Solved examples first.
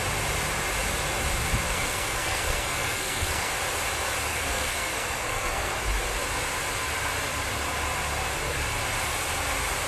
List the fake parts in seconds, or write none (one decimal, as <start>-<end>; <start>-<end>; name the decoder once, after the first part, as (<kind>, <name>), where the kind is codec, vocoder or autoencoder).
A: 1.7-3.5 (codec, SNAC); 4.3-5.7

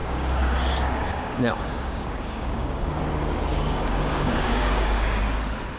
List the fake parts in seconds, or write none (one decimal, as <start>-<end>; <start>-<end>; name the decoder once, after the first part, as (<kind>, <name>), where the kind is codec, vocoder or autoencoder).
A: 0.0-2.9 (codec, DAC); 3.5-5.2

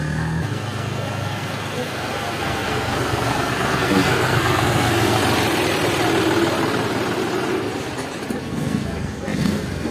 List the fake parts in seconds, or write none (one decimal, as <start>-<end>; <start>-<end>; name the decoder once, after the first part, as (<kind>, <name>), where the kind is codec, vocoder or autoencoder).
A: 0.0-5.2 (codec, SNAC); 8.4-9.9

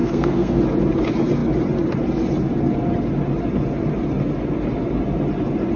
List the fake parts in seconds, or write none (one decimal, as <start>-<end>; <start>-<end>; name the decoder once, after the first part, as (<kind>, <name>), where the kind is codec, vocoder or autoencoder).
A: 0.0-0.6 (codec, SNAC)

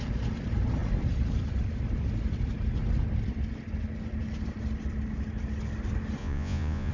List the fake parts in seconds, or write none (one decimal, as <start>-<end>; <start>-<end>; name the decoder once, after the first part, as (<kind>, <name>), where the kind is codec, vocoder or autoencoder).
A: 6.2-6.9 (vocoder, Vocos)

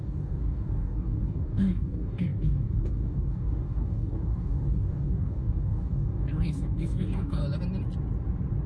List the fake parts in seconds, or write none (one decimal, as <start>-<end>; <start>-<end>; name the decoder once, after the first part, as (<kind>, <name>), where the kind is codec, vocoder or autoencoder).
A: 0.0-7.4 (codec, DAC)

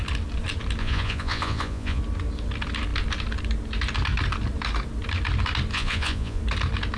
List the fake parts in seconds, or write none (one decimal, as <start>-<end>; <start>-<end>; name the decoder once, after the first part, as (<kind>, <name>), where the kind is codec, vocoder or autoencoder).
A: 0.8-2.0 (vocoder, Vocos); 5.7-6.4